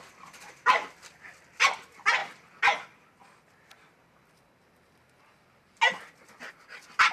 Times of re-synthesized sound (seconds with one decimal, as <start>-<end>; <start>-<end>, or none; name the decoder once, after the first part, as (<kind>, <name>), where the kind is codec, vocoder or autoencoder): none